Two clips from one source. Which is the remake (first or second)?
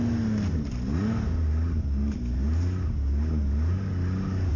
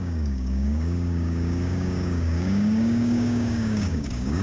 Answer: second